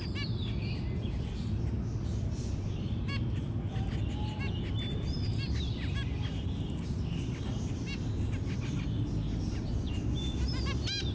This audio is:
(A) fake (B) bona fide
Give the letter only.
B